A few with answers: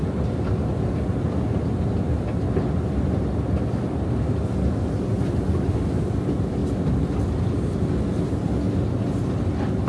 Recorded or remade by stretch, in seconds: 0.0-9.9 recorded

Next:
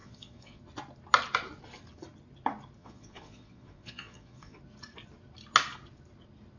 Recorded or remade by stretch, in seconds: 0.0-0.6 remade; 0.6-2.8 recorded; 2.8-4.6 remade; 4.6-6.6 recorded

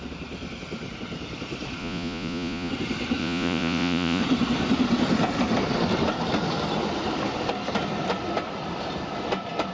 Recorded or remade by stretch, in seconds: 0.0-1.8 recorded; 1.8-2.7 remade; 2.7-3.2 recorded; 3.2-4.2 remade; 4.2-9.7 recorded

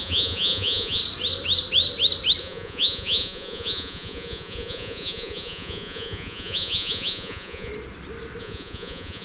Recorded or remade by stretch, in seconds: 0.0-1.0 remade; 1.0-2.4 recorded; 2.4-7.7 remade; 7.7-8.4 recorded; 8.4-9.2 remade

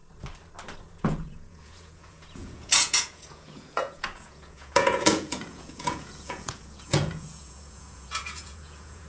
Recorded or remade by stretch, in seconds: 0.0-0.8 recorded; 0.8-9.1 remade

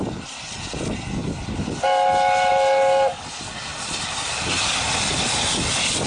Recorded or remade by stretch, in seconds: 0.0-6.1 recorded

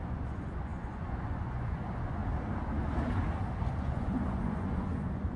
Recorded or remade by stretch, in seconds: 0.0-2.2 remade; 2.2-3.8 recorded; 3.8-5.4 remade

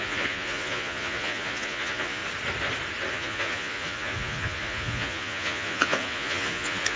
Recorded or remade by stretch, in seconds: 0.0-2.2 remade; 2.2-3.1 recorded; 3.1-7.0 remade